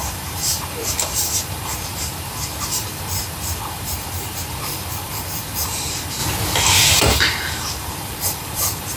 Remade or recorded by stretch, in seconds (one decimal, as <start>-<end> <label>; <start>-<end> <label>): 0.0-6.2 remade; 6.2-7.0 recorded; 7.0-9.0 remade